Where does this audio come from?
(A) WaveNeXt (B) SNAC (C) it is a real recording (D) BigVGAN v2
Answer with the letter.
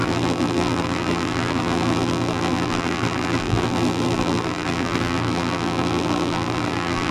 D